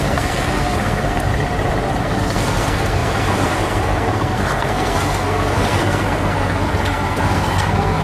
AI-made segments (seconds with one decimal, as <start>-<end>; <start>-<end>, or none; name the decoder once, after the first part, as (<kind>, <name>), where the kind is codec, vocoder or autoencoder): 0.0-1.3 (codec, SNAC); 2.0-8.0